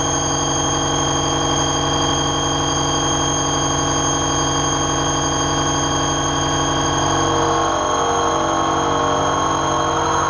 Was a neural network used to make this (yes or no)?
no